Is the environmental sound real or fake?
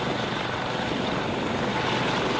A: real